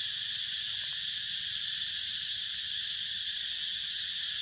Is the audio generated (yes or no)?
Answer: yes